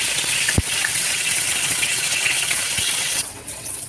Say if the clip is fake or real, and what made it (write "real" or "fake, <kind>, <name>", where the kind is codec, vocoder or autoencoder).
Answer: fake, vocoder, WaveNeXt